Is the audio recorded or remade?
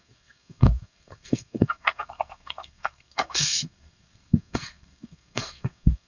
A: remade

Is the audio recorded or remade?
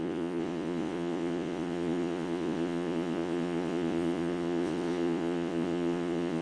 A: remade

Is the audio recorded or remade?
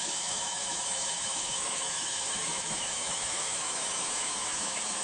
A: remade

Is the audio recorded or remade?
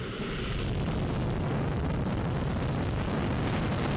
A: remade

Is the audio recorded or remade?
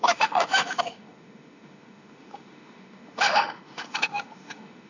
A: remade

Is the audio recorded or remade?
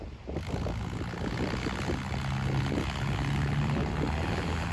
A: recorded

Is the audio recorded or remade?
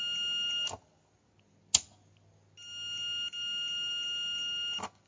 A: recorded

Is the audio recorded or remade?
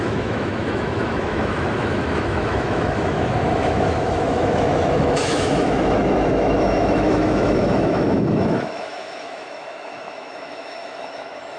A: remade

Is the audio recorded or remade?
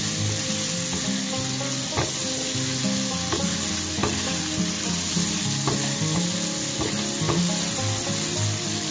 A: recorded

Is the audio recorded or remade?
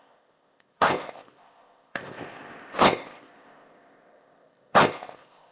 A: remade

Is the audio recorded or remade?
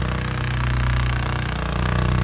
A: recorded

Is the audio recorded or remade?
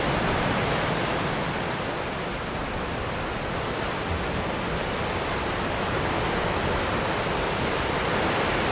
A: recorded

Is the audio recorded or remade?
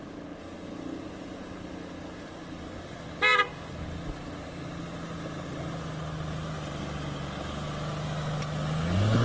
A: recorded